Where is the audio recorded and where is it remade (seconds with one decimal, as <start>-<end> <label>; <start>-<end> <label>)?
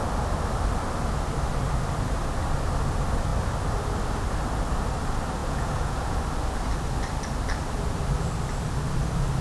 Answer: 0.0-5.4 recorded; 5.4-6.2 remade; 6.2-9.4 recorded